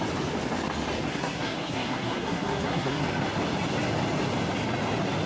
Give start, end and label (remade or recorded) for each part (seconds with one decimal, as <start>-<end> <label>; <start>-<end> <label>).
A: 0.0-1.1 recorded; 1.1-3.0 remade; 3.0-5.3 recorded